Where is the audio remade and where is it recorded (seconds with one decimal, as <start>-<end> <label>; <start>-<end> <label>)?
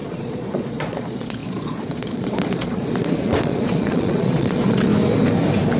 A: 0.0-4.9 remade; 4.9-5.8 recorded